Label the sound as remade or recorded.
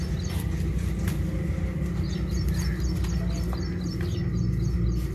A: recorded